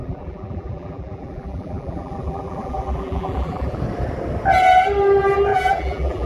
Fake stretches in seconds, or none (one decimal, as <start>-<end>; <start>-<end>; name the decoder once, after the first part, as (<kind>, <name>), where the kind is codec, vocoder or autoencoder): 0.0-3.8 (vocoder, BigVGAN v2); 5.5-6.3